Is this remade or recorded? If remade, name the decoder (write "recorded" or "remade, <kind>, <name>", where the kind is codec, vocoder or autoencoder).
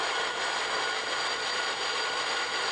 recorded